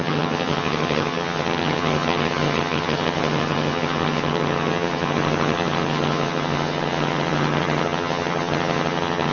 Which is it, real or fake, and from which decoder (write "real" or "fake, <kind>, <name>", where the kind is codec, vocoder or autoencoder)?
fake, vocoder, HiFi-GAN